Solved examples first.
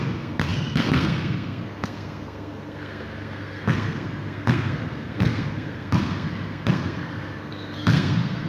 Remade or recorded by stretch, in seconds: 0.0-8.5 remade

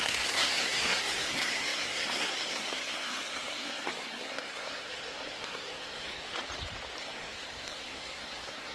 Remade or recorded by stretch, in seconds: 0.0-6.3 remade; 6.3-7.0 recorded; 7.0-8.7 remade

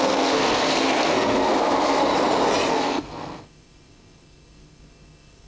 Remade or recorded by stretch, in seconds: 0.0-2.0 remade; 2.0-2.7 recorded; 2.7-5.5 remade

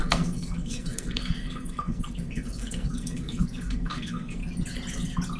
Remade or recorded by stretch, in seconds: 0.0-4.4 remade; 4.4-5.4 recorded

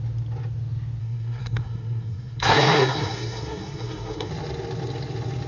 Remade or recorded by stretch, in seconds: 0.0-1.0 recorded; 1.0-4.3 remade; 4.3-5.5 recorded